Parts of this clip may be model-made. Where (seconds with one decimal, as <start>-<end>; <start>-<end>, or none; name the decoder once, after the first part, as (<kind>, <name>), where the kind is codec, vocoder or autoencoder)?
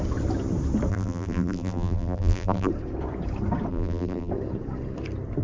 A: 0.9-2.7 (vocoder, BigVGAN v2); 3.7-4.3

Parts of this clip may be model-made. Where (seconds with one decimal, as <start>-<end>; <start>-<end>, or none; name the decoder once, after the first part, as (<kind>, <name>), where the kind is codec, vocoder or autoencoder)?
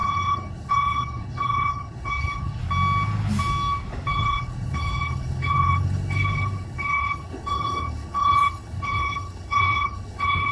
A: 0.0-2.6 (codec, HILCodec); 4.1-10.5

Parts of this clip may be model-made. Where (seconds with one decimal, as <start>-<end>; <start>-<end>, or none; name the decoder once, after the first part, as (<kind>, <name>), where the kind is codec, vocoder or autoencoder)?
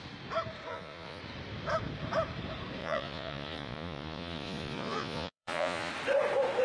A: 0.7-1.2 (vocoder, Vocos); 2.8-5.9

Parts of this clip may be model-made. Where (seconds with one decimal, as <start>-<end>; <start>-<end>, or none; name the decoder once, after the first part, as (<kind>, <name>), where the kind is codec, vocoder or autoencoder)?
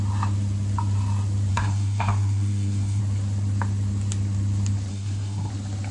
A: 1.5-3.0 (codec, SNAC); 4.9-5.5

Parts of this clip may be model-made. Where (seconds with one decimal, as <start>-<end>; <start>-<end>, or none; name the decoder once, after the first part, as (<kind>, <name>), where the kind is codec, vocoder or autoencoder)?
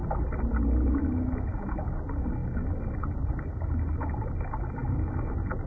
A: none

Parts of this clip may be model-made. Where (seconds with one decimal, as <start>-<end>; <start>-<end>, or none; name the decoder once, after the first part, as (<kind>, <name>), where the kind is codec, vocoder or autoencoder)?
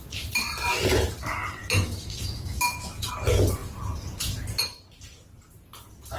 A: 1.6-3.1 (autoencoder, DAC-VAE)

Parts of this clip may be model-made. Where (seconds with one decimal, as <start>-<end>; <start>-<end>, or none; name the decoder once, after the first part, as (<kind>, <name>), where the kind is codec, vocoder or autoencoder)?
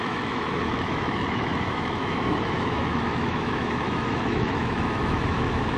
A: 0.0-5.8 (autoencoder, DAC-VAE)